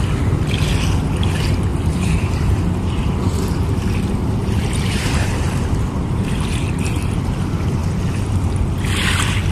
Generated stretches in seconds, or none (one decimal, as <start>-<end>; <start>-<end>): 1.7-3.5; 4.4-6.4